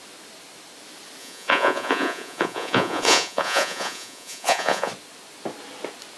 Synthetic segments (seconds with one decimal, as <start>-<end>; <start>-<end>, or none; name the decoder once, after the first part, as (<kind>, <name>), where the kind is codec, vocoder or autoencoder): 1.2-4.9 (vocoder, Vocos)